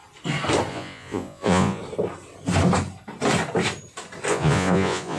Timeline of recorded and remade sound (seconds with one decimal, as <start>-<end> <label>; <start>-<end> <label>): 0.0-0.7 recorded; 0.7-1.8 remade; 1.8-4.3 recorded; 4.3-5.2 remade

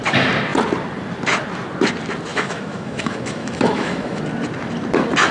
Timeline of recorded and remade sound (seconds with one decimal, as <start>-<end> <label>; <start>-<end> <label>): 0.0-2.3 recorded; 2.3-4.2 remade; 4.2-5.3 recorded